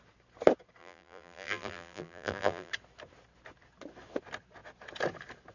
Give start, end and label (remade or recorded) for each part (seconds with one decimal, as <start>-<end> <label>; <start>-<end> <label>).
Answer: 0.0-0.8 recorded; 0.8-2.7 remade; 2.7-5.5 recorded